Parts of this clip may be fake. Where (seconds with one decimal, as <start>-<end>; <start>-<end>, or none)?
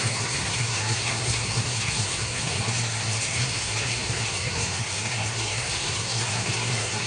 0.0-7.1